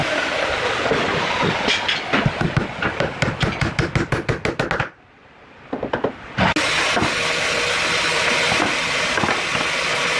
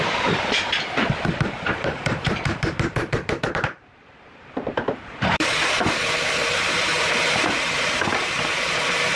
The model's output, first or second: second